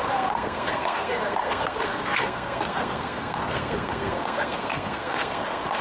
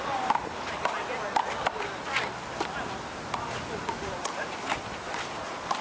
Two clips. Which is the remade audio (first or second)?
first